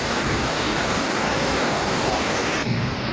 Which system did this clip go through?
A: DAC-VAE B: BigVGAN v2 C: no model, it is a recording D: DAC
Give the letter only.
D